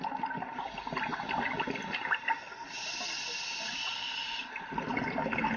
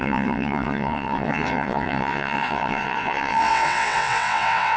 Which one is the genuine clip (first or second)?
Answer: first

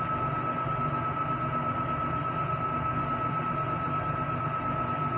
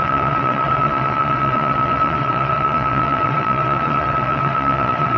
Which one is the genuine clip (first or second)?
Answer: first